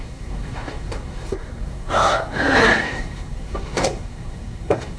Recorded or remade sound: remade